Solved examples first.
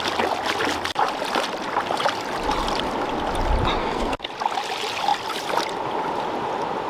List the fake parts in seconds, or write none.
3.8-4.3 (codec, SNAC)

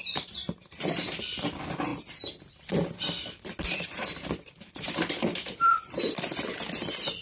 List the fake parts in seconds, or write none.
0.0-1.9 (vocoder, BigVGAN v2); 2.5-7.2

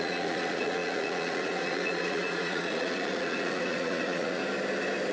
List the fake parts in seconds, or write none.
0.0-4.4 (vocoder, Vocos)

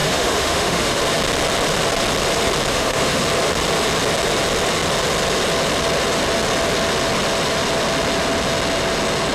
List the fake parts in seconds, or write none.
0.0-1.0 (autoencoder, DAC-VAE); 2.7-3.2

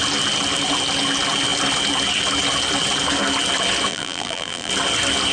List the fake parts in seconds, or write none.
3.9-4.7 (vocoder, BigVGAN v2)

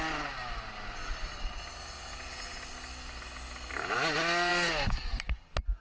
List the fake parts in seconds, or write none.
none

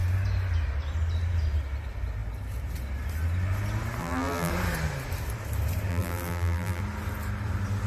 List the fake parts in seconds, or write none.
4.0-4.5 (vocoder, BigVGAN v2); 5.9-6.8

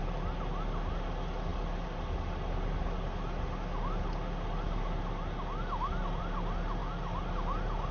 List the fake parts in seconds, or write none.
none